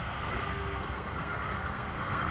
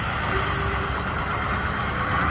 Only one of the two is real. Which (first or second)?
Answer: second